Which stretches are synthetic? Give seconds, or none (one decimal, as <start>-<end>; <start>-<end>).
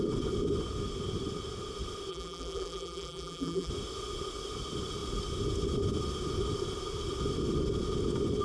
2.1-3.7